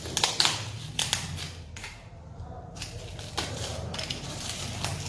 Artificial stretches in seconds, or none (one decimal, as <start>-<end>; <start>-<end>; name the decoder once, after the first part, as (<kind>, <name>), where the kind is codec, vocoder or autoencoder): 1.8-4.6 (vocoder, BigVGAN v2)